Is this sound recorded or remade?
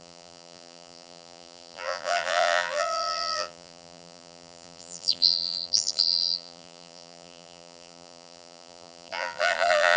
remade